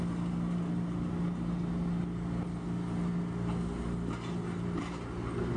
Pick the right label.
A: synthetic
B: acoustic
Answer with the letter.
B